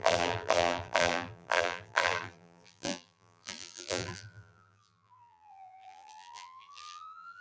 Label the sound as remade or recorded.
remade